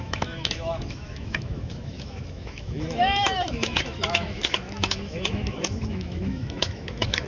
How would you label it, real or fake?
fake